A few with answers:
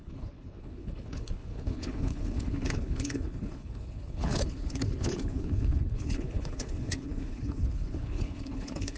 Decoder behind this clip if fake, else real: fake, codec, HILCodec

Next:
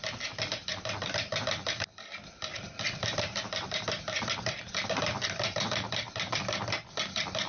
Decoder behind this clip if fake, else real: fake, vocoder, BigVGAN v2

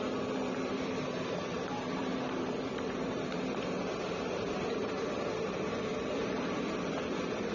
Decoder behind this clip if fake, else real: fake, vocoder, BigVGAN v2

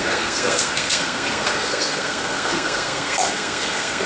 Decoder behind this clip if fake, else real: fake, codec, SNAC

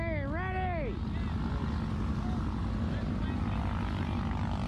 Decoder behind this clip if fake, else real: real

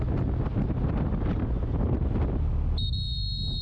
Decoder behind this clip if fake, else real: real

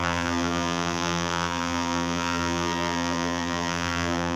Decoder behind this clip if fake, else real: fake, vocoder, BigVGAN v2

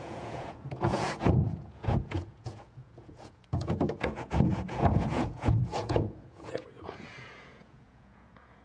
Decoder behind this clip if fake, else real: fake, vocoder, Vocos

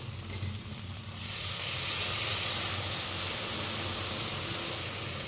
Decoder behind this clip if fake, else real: real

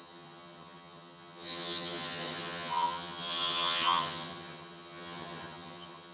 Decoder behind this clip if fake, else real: fake, vocoder, HiFi-GAN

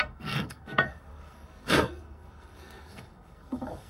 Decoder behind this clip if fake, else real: fake, codec, SNAC